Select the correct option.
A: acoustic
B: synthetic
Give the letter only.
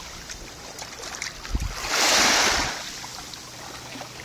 A